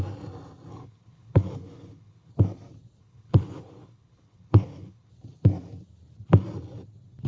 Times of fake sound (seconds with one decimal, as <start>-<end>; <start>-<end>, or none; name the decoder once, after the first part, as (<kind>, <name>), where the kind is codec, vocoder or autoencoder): 0.7-2.3 (codec, HILCodec); 3.0-5.1